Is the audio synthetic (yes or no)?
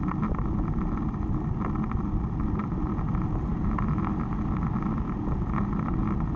no